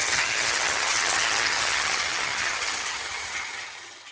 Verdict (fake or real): fake